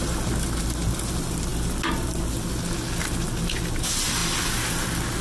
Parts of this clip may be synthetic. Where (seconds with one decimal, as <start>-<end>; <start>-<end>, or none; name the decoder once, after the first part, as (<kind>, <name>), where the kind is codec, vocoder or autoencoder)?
none